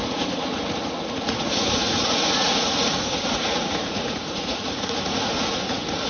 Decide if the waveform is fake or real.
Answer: fake